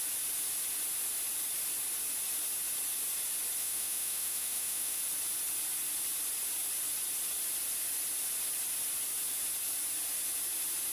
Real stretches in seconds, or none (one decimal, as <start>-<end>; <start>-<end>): 0.0-3.6; 5.0-10.9